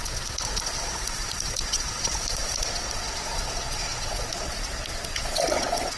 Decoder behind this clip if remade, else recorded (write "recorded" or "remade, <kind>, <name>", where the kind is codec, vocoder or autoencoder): remade, vocoder, Vocos